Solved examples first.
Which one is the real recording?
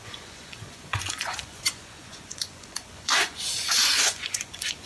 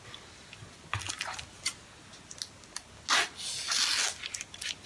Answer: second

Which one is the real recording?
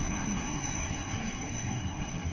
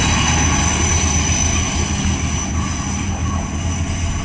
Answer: second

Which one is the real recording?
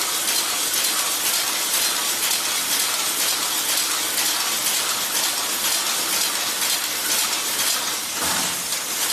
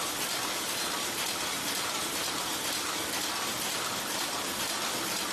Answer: first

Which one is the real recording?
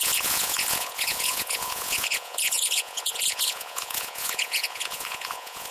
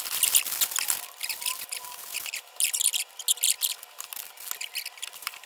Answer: second